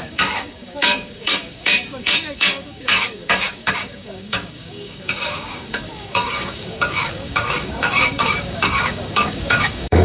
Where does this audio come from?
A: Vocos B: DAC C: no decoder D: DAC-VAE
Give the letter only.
B